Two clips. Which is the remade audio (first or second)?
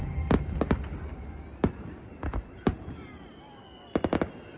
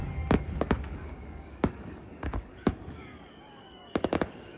second